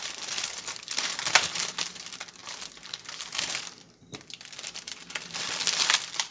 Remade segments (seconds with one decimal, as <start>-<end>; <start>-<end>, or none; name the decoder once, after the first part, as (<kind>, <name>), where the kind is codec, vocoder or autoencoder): 0.0-2.4 (vocoder, BigVGAN v2); 3.6-6.3